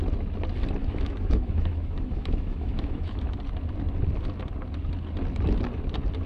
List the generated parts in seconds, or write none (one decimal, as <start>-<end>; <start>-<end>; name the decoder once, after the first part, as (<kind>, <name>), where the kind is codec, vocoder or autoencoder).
0.8-3.4 (autoencoder, DAC-VAE)